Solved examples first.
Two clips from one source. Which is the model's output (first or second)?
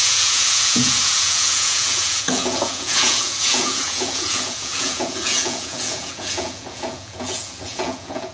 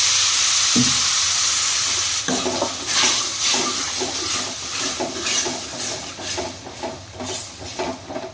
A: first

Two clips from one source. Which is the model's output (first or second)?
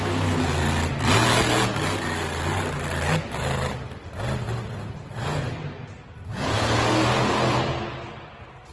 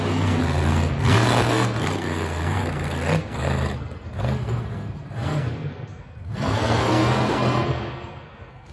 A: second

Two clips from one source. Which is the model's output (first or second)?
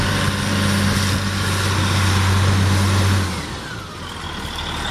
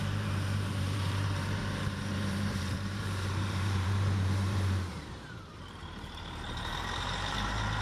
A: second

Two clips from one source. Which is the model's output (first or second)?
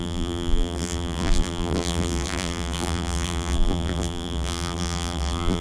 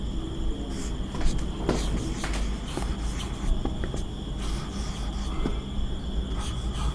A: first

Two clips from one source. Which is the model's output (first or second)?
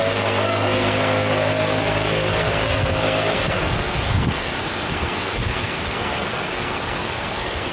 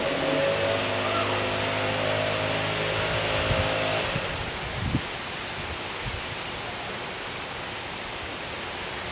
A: first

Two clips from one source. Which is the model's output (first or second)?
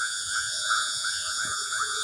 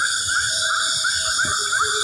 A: first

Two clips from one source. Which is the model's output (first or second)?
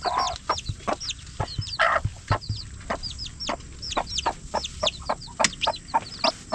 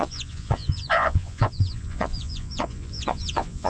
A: second